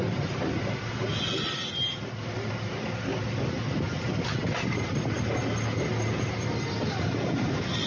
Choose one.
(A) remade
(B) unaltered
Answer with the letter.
B